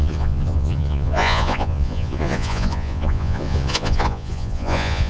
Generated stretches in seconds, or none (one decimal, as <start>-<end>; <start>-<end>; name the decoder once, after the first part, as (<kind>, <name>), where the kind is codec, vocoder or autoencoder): 0.0-5.1 (vocoder, Vocos)